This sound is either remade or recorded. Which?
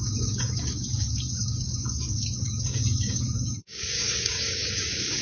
remade